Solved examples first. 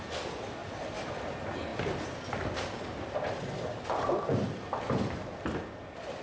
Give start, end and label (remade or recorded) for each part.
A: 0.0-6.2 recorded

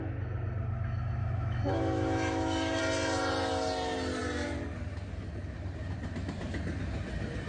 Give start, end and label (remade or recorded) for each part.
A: 0.0-1.2 recorded; 1.2-2.8 remade; 2.8-7.5 recorded